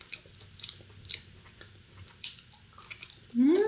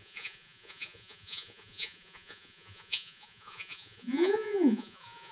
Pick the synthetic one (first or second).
second